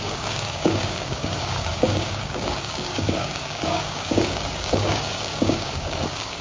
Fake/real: fake